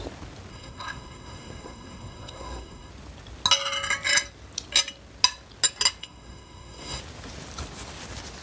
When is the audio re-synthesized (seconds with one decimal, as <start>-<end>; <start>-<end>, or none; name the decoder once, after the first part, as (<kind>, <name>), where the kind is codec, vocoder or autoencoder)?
0.5-2.9 (codec, SNAC); 6.0-7.0